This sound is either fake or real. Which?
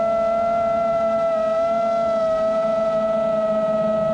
real